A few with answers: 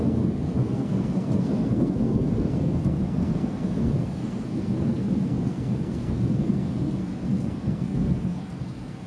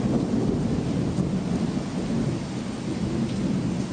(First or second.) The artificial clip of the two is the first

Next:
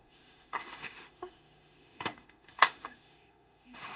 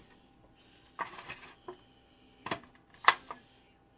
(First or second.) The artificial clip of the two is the first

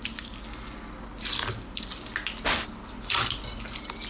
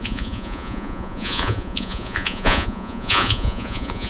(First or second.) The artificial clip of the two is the second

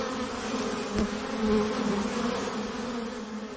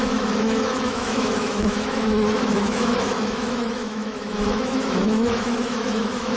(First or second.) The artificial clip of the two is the second